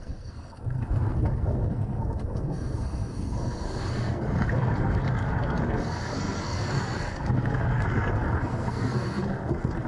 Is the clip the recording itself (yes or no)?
no